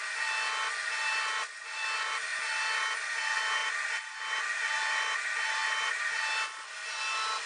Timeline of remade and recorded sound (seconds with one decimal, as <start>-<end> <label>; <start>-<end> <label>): 0.0-7.5 recorded